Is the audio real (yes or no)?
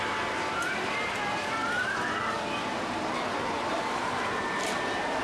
no